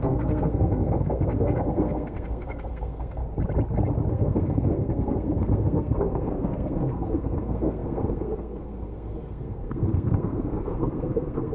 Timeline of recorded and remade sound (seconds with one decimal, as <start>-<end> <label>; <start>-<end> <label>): 0.0-3.2 remade; 3.2-4.1 recorded; 4.1-11.5 remade